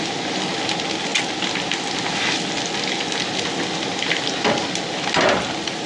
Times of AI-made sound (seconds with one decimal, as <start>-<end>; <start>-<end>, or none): none